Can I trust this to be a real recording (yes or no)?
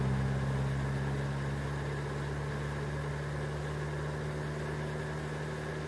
yes